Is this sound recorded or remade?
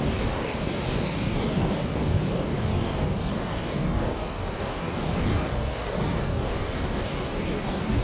remade